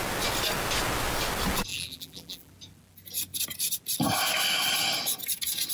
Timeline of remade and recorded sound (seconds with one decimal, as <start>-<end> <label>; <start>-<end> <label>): 0.0-1.7 recorded; 1.7-2.5 remade; 2.5-5.7 recorded